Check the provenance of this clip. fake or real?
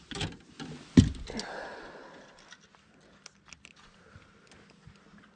real